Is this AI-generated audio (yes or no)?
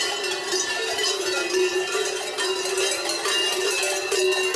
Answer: no